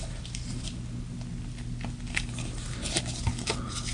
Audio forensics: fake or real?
real